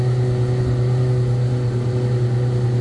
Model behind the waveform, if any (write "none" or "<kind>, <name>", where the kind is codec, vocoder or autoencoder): none